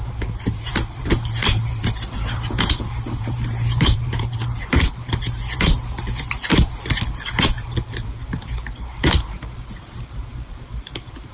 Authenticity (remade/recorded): remade